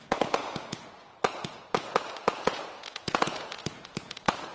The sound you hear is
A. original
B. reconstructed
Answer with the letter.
B